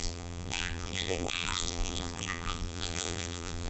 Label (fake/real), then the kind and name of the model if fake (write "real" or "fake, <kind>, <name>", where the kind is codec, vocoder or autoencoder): fake, vocoder, BigVGAN v2